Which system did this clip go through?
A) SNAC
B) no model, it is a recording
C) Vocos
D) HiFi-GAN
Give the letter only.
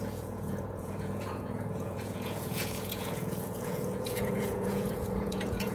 C